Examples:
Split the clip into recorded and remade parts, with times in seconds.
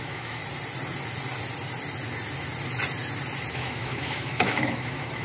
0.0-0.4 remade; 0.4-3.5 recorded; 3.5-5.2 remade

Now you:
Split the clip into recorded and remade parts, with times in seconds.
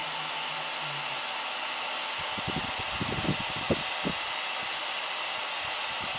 0.0-6.2 recorded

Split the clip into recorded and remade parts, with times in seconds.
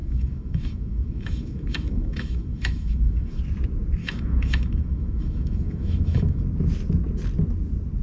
0.0-3.4 remade; 3.4-4.0 recorded; 4.0-6.4 remade; 6.4-8.0 recorded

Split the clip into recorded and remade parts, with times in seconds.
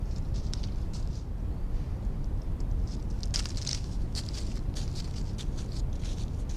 0.0-3.7 recorded; 3.7-4.2 remade; 4.2-6.6 recorded